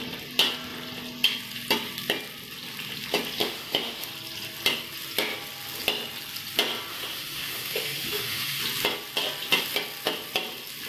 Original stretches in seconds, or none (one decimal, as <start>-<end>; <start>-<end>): 0.0-3.4; 4.1-6.9; 8.6-10.9